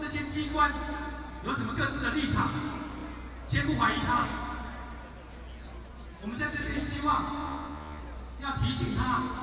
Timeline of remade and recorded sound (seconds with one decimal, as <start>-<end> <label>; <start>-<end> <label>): 0.0-7.4 recorded; 7.4-8.0 remade; 8.0-9.4 recorded